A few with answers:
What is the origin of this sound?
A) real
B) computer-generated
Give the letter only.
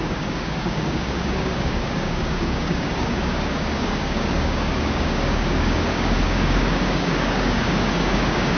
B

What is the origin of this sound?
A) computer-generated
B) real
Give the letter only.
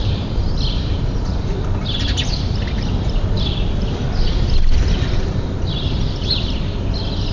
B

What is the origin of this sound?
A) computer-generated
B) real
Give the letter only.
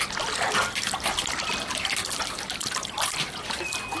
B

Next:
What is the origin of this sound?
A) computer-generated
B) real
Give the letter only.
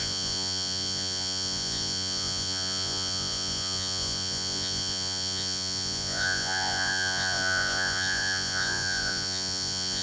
A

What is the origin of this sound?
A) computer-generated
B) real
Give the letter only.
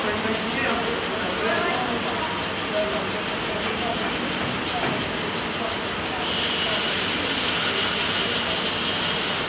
B